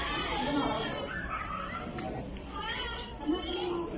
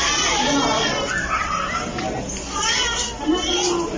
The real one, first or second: second